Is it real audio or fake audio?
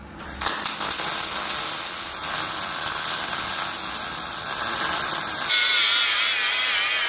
real